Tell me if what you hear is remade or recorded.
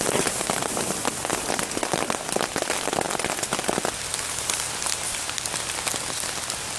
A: recorded